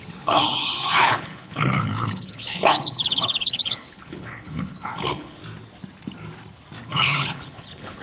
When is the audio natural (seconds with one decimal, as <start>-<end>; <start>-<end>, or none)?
5.4-6.8